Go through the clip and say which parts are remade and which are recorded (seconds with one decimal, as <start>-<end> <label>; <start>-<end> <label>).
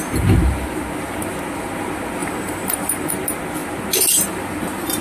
0.0-2.2 recorded; 2.2-3.1 remade; 3.1-5.0 recorded